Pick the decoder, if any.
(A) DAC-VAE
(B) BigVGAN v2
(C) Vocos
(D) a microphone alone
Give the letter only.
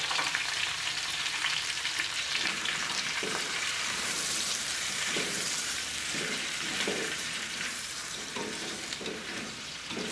B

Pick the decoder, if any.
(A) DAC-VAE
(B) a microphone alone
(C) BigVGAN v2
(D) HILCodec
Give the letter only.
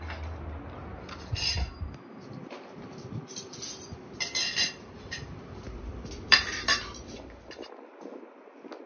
B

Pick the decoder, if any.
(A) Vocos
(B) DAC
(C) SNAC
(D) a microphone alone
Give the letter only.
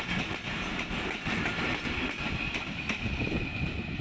D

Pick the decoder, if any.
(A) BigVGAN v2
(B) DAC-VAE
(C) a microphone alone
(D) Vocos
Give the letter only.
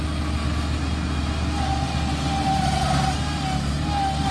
C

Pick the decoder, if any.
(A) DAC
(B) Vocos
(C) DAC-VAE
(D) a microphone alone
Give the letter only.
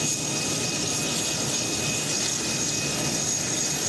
D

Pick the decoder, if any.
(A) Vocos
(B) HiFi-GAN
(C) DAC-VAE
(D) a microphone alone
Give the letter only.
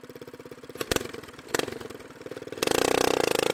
D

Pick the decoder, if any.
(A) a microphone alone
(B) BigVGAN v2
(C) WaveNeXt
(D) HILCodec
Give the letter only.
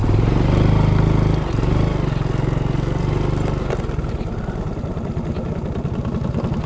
A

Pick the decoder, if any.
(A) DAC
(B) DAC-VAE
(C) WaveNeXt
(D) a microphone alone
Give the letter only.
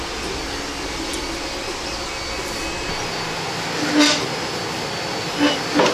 D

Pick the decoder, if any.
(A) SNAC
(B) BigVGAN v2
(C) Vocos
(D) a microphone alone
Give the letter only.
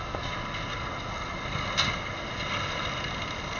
D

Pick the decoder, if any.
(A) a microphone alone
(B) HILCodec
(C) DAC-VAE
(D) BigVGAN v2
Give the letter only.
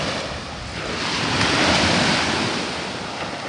A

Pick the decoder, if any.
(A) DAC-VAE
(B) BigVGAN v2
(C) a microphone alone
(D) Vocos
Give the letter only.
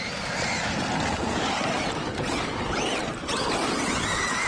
C